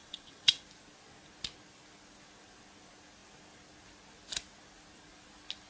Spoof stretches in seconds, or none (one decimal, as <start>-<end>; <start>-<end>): 0.0-0.6